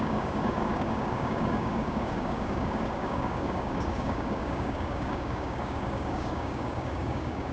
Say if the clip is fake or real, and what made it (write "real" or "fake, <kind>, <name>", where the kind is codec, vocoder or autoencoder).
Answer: fake, codec, DAC